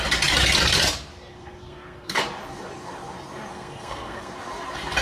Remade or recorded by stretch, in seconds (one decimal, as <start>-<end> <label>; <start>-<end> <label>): 0.0-1.3 recorded; 1.3-2.2 remade; 2.2-3.5 recorded; 3.5-4.3 remade; 4.3-5.0 recorded